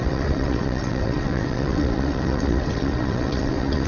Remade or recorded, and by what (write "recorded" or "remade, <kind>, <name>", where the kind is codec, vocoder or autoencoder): remade, vocoder, WaveNeXt